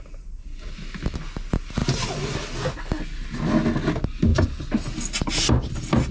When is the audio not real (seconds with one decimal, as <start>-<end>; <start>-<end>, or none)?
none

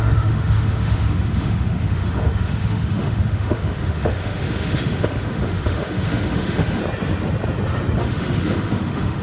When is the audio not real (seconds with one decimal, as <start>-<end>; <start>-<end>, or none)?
0.0-6.8; 8.0-9.2

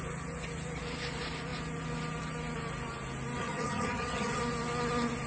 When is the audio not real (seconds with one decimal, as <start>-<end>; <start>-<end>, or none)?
3.4-4.4